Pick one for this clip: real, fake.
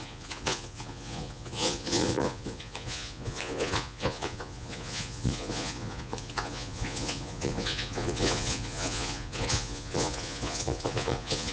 fake